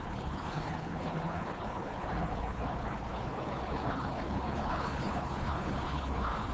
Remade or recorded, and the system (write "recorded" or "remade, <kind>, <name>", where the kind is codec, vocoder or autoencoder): remade, codec, HILCodec